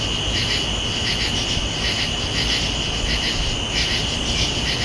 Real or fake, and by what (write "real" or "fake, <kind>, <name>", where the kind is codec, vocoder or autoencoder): real